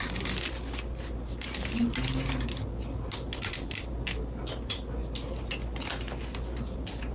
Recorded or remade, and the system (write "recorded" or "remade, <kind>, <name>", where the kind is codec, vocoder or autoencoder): recorded